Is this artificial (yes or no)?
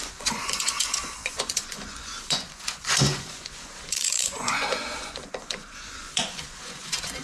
yes